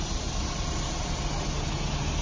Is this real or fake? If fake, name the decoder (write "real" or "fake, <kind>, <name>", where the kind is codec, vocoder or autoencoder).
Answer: real